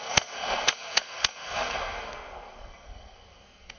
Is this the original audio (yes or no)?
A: no